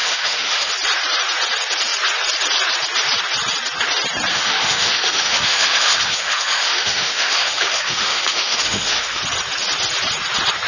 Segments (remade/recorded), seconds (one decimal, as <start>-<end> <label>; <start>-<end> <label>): 0.0-0.7 remade; 0.7-4.3 recorded; 4.3-9.2 remade; 9.2-10.7 recorded